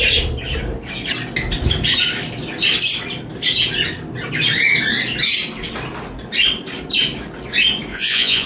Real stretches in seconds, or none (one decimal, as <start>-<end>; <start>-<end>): 0.0-7.9